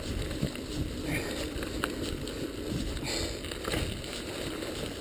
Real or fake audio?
real